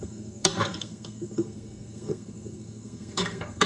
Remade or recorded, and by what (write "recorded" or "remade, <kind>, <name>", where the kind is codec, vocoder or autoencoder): remade, codec, SNAC